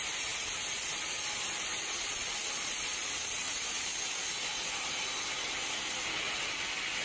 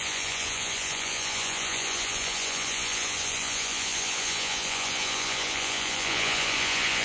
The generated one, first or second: second